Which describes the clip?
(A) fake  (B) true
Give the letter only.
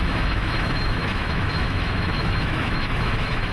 A